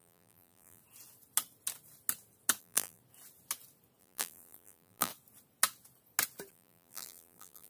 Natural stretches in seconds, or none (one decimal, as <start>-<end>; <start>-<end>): 0.8-2.6; 3.0-4.0; 5.1-6.5